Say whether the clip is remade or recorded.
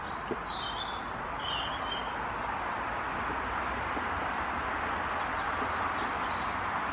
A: recorded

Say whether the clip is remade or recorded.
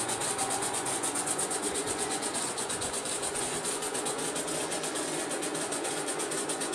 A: remade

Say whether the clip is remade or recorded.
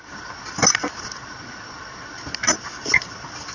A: recorded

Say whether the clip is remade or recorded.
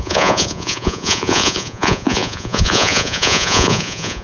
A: remade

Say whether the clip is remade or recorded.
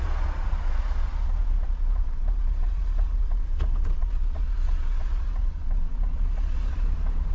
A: remade